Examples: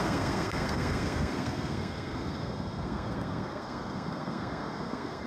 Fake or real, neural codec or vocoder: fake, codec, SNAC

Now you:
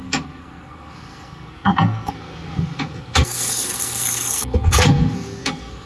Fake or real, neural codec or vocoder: fake, codec, SNAC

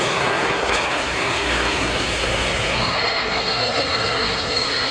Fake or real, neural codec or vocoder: fake, codec, SNAC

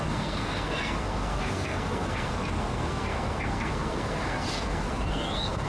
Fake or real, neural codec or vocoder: fake, codec, SNAC